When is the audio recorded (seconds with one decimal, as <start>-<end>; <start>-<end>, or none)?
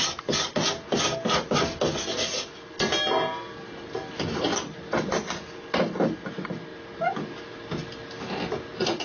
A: 0.0-9.0